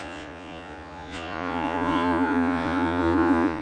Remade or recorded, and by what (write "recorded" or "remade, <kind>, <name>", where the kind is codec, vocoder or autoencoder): remade, vocoder, Vocos